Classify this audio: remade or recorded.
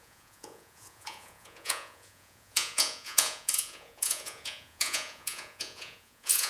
remade